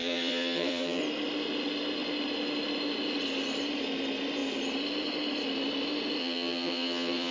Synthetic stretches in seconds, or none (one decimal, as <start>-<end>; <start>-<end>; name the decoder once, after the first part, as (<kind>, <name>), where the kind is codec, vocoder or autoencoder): 0.0-1.0 (vocoder, HiFi-GAN); 6.2-7.3